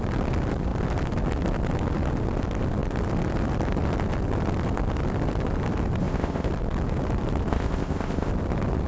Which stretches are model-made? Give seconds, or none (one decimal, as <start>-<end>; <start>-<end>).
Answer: 6.0-6.5; 7.5-8.3

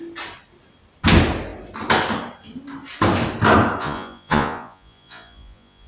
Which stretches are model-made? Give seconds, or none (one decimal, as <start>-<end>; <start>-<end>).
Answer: 3.8-5.9